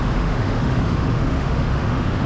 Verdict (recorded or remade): remade